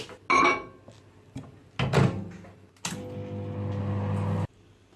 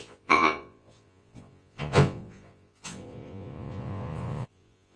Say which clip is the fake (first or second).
second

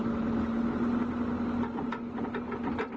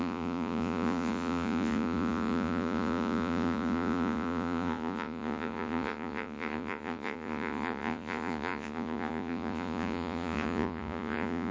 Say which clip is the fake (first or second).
second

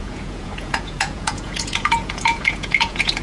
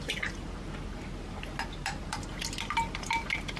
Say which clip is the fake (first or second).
first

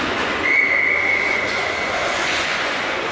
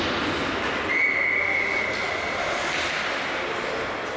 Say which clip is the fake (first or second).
first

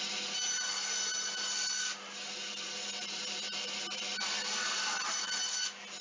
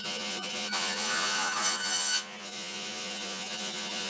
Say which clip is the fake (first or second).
second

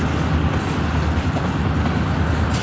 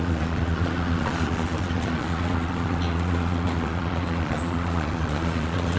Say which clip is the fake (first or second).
second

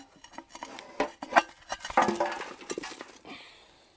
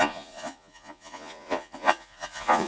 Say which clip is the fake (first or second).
second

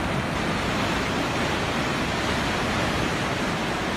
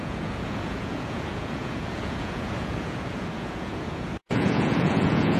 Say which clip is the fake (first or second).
second